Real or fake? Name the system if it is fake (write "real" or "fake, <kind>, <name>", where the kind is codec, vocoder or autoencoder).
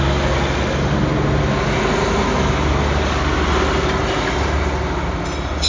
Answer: real